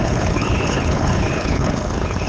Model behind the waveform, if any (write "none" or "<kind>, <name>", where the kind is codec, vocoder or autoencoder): codec, HILCodec